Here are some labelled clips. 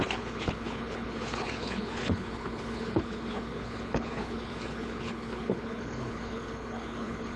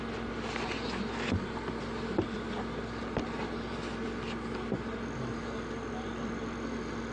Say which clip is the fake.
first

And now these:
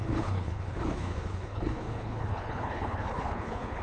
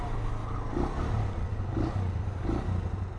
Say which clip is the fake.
first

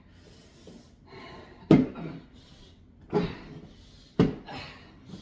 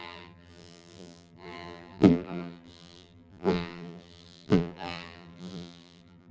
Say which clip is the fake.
second